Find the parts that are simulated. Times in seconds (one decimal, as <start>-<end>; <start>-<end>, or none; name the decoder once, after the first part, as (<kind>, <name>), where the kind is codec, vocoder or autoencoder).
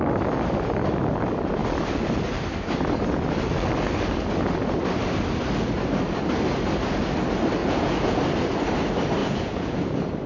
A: 7.6-8.2 (vocoder, Vocos); 9.2-9.8